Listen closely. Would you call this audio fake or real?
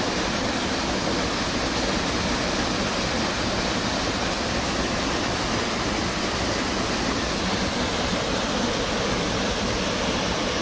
real